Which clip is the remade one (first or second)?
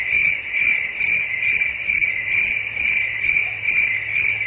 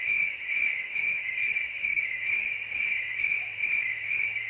second